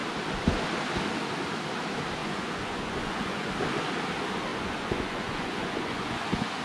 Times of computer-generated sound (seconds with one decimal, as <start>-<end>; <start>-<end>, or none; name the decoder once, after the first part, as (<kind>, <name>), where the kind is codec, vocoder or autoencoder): 2.2-3.5 (vocoder, Vocos); 4.5-6.6